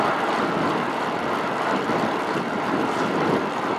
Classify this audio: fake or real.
real